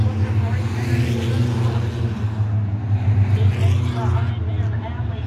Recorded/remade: recorded